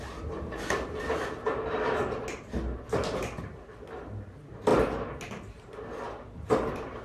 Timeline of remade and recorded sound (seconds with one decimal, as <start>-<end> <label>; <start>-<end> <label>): 0.0-7.0 recorded